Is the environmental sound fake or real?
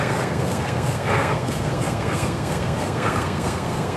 fake